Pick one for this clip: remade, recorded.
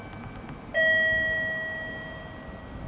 recorded